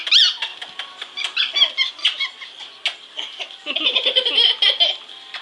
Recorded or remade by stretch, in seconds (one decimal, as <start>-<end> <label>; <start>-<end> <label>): 0.0-5.4 recorded